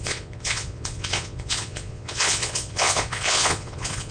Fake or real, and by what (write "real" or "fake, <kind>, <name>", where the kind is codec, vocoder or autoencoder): fake, vocoder, Vocos